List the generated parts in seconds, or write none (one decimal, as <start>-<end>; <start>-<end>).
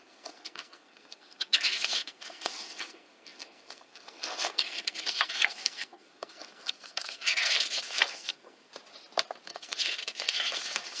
0.0-8.7; 9.5-11.0